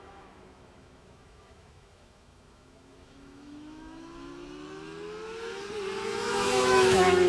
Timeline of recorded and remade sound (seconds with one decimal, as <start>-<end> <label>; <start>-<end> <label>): 0.0-4.3 remade; 4.3-6.2 recorded; 6.2-7.3 remade